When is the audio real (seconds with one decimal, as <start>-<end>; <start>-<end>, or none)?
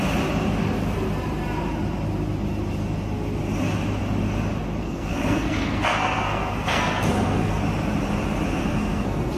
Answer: 0.0-4.8; 7.6-8.6